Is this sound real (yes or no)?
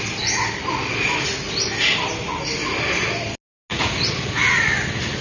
yes